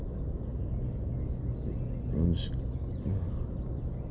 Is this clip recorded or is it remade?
recorded